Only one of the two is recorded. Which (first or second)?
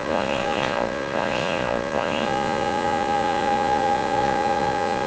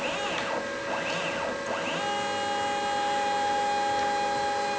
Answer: second